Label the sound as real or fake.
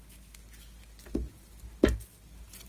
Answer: real